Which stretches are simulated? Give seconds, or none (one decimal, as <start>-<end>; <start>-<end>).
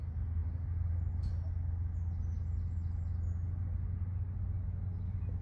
none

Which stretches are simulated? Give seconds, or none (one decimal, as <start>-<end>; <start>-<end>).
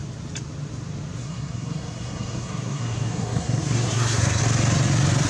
1.2-4.4